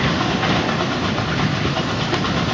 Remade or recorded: recorded